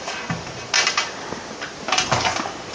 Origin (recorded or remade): recorded